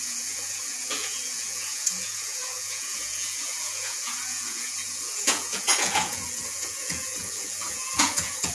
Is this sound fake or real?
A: fake